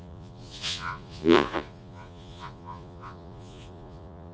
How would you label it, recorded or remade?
remade